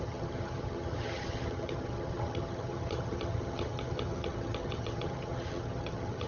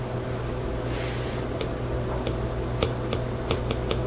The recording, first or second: second